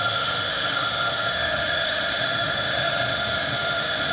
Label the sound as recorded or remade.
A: remade